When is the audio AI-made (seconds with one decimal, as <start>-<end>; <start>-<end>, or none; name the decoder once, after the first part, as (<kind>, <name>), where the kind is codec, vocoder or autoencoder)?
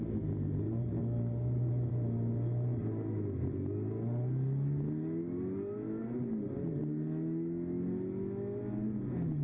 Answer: 1.0-1.9 (codec, DAC)